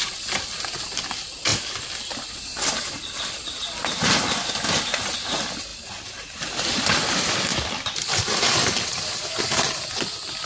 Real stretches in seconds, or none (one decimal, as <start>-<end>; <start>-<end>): 0.0-10.5